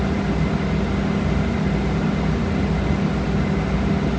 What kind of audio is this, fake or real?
real